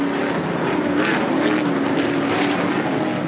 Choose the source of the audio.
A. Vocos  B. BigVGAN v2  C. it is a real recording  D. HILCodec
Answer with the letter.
C